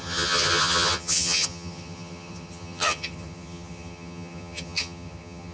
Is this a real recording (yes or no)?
no